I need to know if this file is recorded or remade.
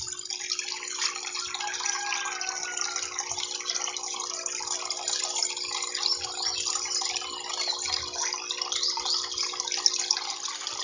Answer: recorded